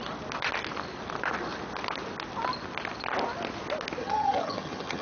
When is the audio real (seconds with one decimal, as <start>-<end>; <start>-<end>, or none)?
0.0-4.0